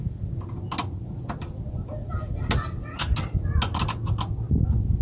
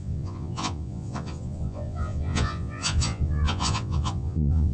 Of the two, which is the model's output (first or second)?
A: second